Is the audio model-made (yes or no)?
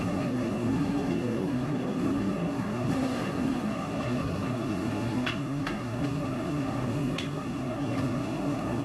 yes